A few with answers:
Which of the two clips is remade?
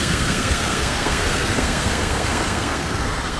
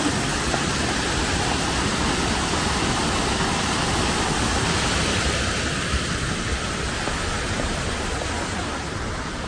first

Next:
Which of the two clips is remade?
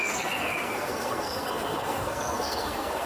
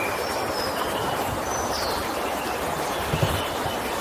first